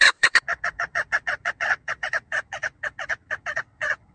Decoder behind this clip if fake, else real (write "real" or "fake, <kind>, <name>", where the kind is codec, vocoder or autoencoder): fake, vocoder, WaveNeXt